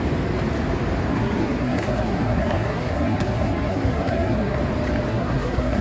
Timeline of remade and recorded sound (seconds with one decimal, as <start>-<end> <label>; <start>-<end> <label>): 0.0-1.1 recorded; 1.1-4.6 remade; 4.6-5.1 recorded; 5.1-5.8 remade